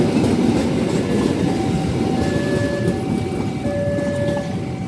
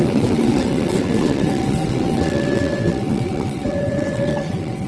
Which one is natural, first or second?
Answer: first